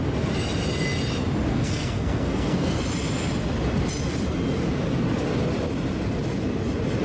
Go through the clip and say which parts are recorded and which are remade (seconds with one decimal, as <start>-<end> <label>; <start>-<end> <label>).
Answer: 0.0-1.5 recorded; 1.5-2.8 remade; 2.8-7.0 recorded